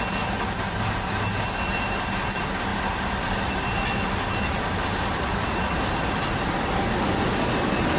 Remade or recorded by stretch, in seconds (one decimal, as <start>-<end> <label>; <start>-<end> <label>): 0.0-8.0 recorded